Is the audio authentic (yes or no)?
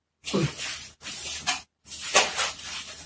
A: yes